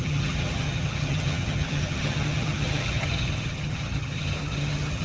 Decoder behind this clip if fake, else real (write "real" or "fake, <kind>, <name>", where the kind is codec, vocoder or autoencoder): fake, vocoder, HiFi-GAN